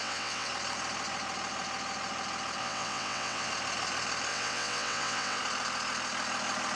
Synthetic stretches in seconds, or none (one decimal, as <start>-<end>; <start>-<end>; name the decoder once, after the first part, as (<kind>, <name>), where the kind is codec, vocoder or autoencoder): 0.0-0.5 (vocoder, WaveNeXt); 2.6-3.5; 4.3-5.4